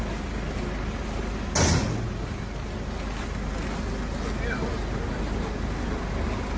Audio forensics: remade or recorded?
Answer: recorded